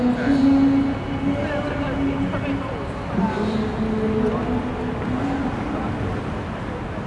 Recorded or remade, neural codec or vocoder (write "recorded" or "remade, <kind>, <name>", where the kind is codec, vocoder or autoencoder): recorded